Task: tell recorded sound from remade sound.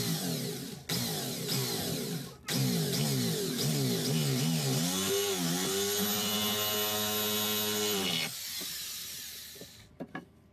recorded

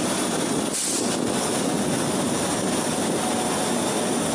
recorded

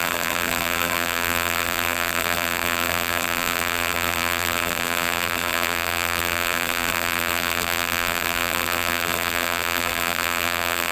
remade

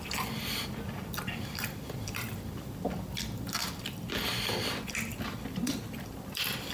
remade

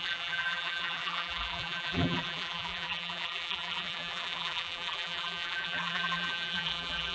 remade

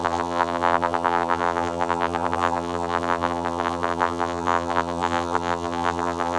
remade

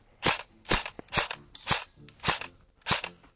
recorded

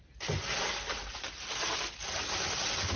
recorded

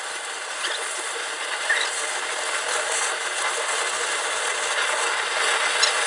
recorded